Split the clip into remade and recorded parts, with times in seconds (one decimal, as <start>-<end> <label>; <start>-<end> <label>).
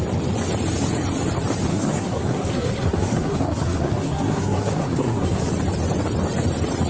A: 0.0-1.7 recorded; 1.7-5.4 remade; 5.4-6.9 recorded